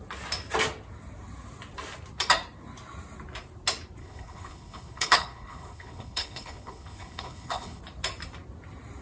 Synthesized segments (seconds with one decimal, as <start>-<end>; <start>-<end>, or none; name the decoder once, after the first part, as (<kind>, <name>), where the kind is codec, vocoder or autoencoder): 4.0-7.8 (codec, HILCodec)